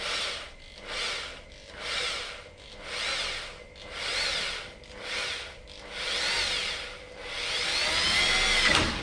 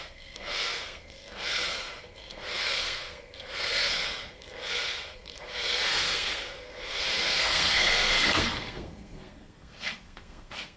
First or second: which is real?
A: first